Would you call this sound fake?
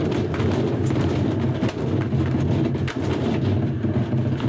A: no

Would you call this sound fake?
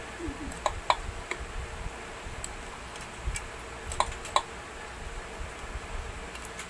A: no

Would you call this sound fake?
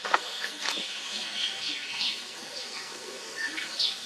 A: yes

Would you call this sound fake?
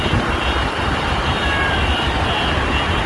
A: no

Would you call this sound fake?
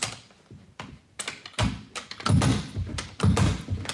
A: no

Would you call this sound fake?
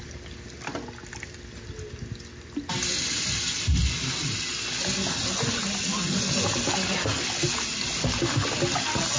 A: no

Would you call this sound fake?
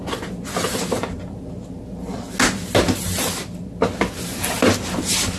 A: no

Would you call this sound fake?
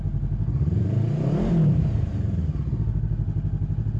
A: no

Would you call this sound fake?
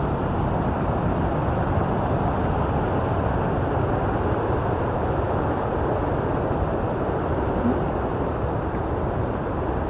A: no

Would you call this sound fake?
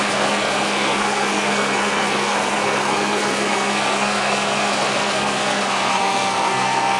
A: yes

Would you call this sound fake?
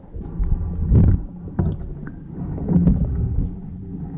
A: no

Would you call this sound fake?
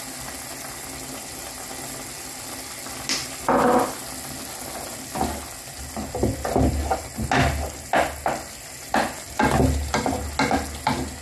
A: no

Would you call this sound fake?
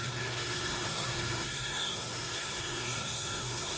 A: yes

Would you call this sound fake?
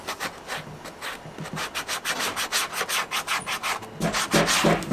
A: no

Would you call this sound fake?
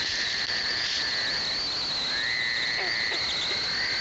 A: no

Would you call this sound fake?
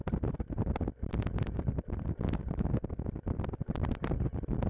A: no